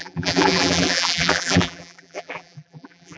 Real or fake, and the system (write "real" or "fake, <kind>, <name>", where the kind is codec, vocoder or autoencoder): fake, vocoder, BigVGAN v2